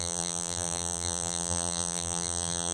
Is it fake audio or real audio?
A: fake